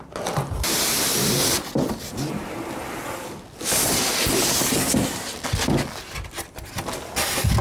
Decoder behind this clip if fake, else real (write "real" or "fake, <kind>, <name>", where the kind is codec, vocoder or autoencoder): real